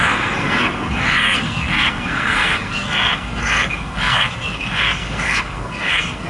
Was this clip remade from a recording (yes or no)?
yes